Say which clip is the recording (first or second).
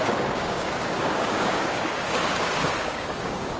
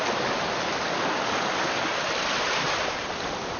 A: second